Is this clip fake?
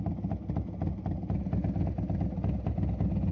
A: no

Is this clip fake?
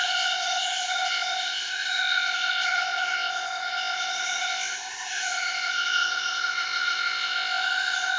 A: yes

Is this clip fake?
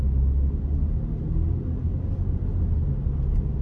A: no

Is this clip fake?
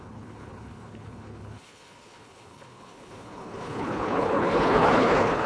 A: yes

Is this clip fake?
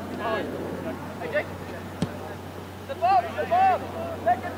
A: no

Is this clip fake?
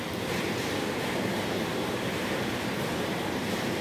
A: yes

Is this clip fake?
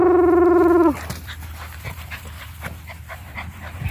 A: yes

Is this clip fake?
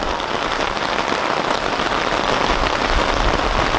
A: no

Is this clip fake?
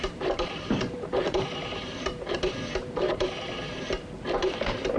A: yes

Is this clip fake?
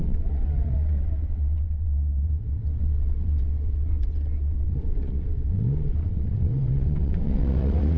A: yes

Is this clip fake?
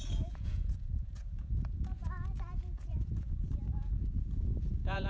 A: yes